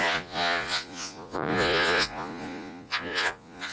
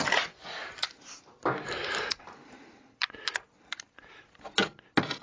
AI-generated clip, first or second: first